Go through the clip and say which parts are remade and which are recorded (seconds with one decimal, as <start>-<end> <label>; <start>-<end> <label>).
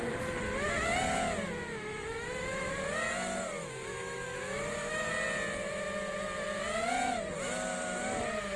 0.0-1.7 recorded; 1.7-2.7 remade; 2.7-3.6 recorded; 3.6-5.1 remade; 5.1-8.6 recorded